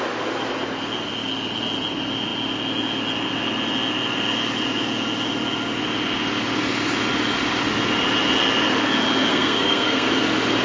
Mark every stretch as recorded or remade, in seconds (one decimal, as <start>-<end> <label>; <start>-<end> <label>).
0.0-9.3 recorded; 9.3-10.1 remade; 10.1-10.6 recorded